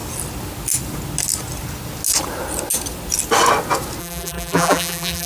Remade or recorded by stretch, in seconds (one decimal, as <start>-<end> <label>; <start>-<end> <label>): 0.0-4.0 recorded; 4.0-5.3 remade